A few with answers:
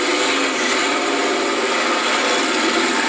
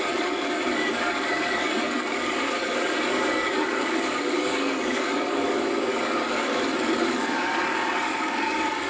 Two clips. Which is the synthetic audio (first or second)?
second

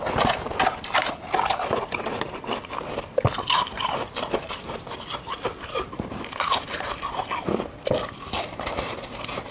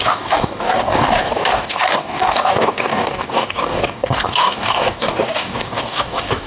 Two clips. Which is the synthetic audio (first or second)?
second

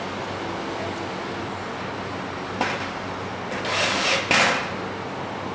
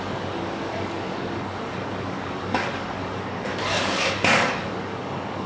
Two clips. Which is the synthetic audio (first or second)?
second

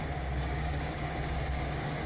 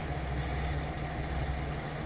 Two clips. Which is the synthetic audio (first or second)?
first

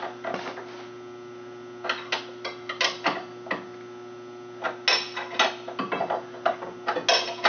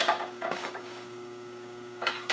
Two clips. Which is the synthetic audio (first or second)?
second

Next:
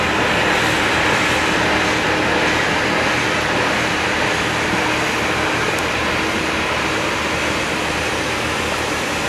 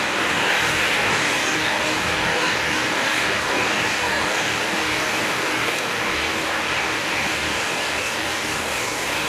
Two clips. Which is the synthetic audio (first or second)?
second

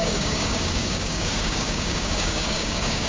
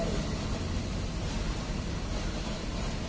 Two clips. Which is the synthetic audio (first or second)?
first